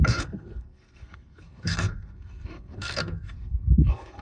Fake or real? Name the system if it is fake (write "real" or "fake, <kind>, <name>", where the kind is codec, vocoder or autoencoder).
fake, codec, SNAC